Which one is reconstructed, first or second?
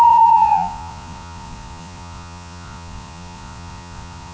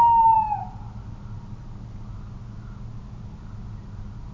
first